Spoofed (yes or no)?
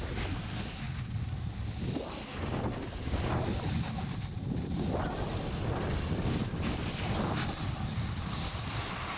no